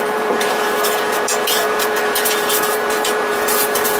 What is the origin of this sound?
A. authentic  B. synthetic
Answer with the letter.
B